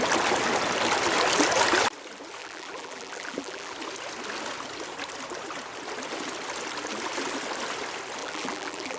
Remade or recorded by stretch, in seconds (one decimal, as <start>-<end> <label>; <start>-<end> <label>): 0.0-2.4 recorded; 2.4-3.7 remade; 3.7-8.2 recorded; 8.2-9.0 remade